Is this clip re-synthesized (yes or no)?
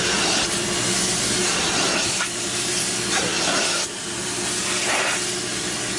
no